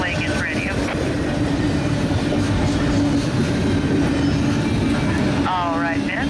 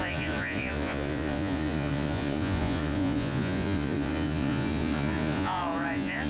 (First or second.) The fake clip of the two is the second